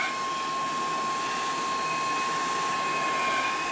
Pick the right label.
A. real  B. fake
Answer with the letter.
A